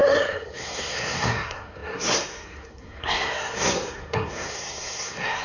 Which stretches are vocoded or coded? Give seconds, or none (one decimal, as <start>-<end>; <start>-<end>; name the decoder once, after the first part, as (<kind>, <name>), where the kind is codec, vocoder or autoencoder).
0.0-5.4 (codec, SNAC)